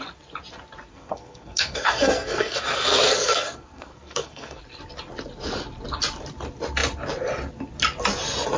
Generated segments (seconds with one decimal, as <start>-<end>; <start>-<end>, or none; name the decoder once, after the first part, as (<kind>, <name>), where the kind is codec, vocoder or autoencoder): 0.9-4.6 (codec, SNAC)

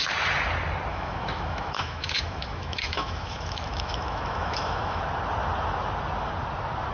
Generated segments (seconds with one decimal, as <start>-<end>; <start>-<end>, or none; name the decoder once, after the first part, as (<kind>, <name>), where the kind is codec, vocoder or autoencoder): 0.9-5.0 (autoencoder, DAC-VAE)